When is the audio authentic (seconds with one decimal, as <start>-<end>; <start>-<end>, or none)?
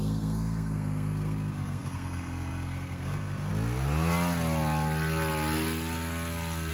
3.5-6.7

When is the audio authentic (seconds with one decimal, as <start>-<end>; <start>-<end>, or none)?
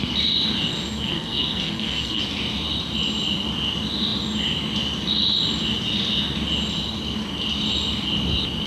0.0-0.7; 2.2-8.7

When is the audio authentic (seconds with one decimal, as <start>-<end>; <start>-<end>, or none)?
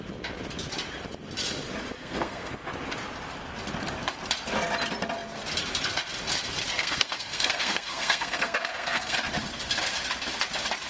0.0-2.0; 2.5-6.8; 9.2-10.9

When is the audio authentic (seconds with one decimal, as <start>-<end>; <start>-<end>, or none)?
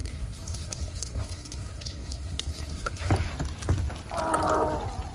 3.1-5.1